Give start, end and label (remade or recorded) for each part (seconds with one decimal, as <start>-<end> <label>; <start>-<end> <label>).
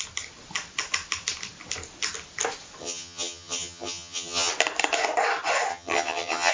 0.0-2.8 recorded; 2.8-4.5 remade; 4.5-5.7 recorded; 5.7-6.5 remade